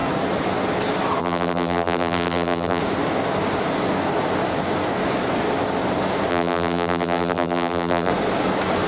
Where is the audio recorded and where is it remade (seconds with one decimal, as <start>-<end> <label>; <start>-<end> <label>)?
0.0-1.2 recorded; 1.2-2.8 remade; 2.8-6.3 recorded; 6.3-8.1 remade; 8.1-8.9 recorded